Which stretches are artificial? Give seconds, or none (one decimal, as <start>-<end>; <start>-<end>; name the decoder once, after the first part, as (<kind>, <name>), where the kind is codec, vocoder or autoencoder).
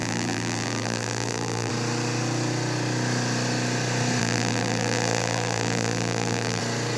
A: 0.0-1.7 (vocoder, BigVGAN v2); 4.2-6.6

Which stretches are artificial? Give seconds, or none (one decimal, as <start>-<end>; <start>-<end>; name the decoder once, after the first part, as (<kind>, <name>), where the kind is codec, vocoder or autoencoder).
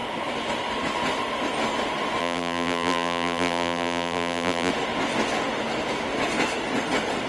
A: 2.2-4.7 (vocoder, BigVGAN v2)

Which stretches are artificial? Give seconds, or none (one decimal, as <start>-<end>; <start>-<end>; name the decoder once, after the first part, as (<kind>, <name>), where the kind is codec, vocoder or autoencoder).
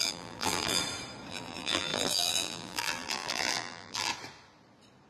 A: 0.0-0.8 (vocoder, BigVGAN v2); 1.3-4.1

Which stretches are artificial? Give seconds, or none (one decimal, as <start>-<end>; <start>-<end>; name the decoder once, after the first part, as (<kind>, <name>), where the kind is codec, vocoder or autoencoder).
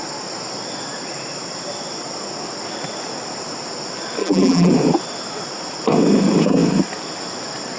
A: 4.2-4.7 (vocoder, BigVGAN v2)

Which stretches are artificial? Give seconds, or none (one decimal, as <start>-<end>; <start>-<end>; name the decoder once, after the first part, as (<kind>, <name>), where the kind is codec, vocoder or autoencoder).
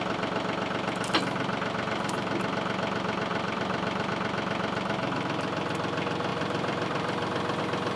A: 3.3-4.1 (vocoder, BigVGAN v2); 6.3-7.6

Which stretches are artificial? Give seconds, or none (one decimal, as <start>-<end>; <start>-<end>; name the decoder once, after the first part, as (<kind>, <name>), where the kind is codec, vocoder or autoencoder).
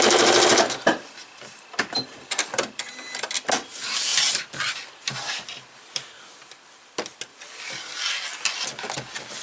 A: none